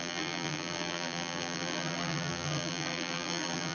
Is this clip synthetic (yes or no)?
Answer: yes